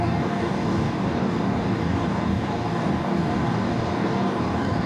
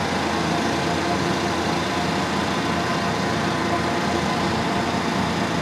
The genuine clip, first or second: second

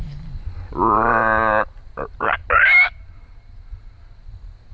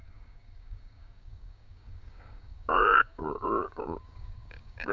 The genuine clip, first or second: first